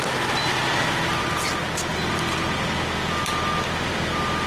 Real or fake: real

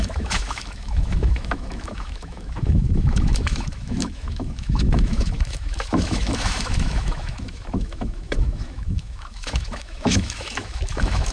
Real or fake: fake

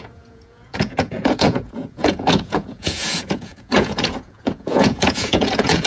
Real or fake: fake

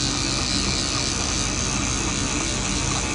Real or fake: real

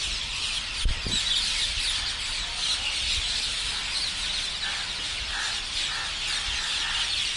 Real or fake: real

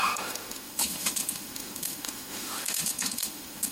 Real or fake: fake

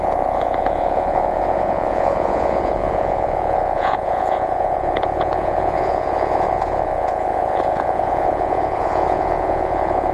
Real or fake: fake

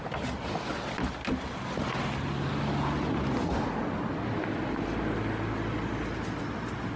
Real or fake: real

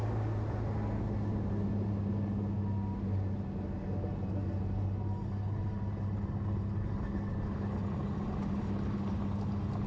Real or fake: real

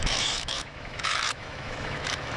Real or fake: fake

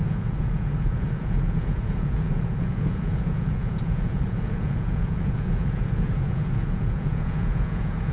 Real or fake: fake